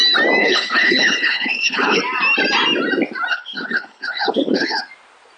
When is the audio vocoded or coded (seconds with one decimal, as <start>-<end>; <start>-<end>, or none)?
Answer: 0.4-2.0; 3.3-4.8